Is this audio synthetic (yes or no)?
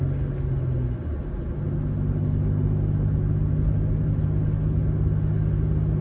no